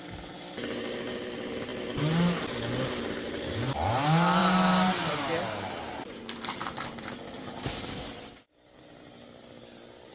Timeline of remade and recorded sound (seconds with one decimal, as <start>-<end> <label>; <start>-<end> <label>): 0.0-4.4 recorded; 4.4-8.3 remade; 8.3-10.1 recorded